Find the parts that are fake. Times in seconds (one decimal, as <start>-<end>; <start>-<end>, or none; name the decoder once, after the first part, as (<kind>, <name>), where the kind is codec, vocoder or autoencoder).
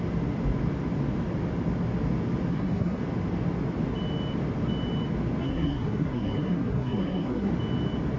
2.5-3.0 (codec, SNAC); 5.4-7.5